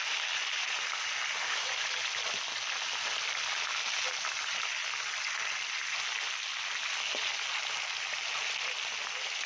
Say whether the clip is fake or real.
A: real